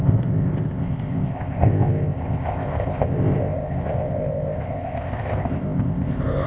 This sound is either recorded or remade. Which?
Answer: remade